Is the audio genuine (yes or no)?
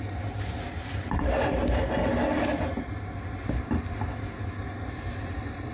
yes